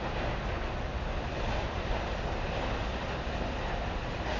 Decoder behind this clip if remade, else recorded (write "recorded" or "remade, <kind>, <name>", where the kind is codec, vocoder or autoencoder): recorded